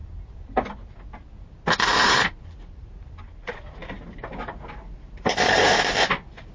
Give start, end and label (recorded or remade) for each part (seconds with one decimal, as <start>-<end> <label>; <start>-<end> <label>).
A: 0.0-6.5 recorded

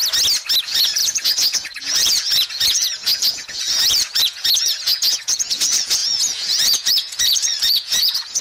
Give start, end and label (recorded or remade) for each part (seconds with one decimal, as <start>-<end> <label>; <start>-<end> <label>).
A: 0.0-0.6 recorded; 0.6-8.4 remade